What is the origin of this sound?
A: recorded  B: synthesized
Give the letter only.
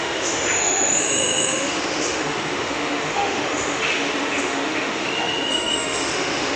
B